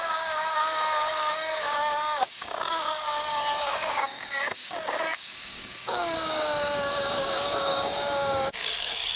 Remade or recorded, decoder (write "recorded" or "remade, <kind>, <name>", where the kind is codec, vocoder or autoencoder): remade, codec, DAC